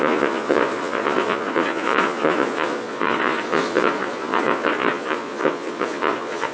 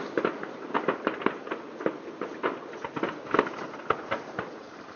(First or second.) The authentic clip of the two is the second